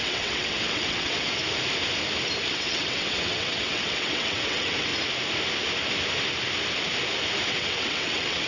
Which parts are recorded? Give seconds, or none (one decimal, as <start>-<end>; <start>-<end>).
1.4-2.5; 4.9-7.5